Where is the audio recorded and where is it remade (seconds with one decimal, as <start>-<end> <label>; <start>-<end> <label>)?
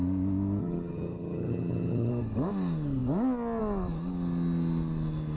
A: 0.0-0.6 recorded; 0.6-2.1 remade; 2.1-5.4 recorded